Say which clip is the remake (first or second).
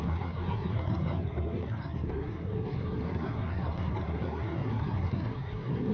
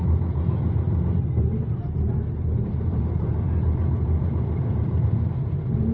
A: first